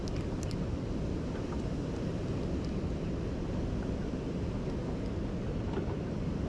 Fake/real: real